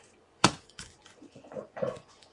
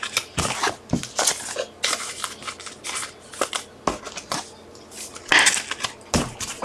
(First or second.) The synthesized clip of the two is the first